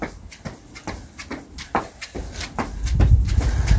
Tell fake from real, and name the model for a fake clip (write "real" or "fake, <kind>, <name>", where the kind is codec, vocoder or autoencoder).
real